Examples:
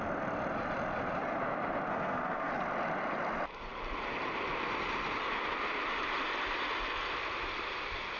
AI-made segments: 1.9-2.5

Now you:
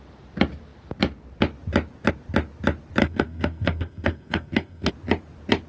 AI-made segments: 3.0-4.9

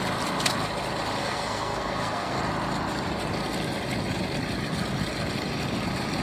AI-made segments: 1.2-2.4

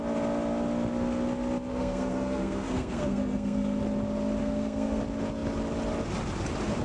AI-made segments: 1.7-3.8; 4.4-5.0

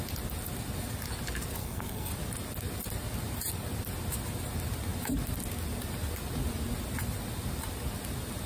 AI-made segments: 1.6-2.1

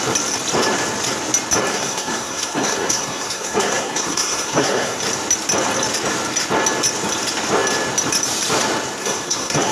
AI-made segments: 1.7-5.0; 9.0-9.7